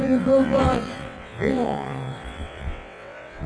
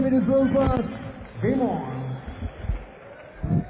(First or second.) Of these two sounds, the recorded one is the second